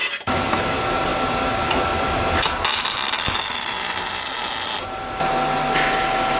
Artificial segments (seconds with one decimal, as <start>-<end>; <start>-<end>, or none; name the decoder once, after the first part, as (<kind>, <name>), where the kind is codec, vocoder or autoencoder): 0.0-0.6 (vocoder, BigVGAN v2); 1.1-4.5